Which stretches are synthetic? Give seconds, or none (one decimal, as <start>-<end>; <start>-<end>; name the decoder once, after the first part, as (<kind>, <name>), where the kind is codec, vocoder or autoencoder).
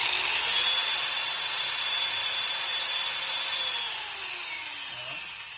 none